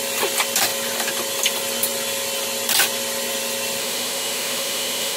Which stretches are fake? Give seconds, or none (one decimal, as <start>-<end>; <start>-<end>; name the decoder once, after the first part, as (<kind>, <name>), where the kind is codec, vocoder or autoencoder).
3.8-5.2 (autoencoder, DAC-VAE)